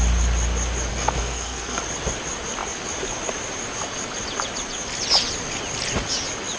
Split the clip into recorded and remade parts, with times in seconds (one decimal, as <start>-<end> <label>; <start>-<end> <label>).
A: 0.0-0.9 recorded; 0.9-1.8 remade; 1.8-6.6 recorded